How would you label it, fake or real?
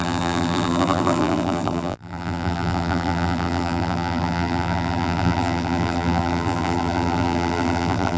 fake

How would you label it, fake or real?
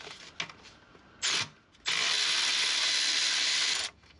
real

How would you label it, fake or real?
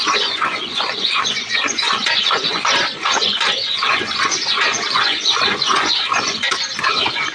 fake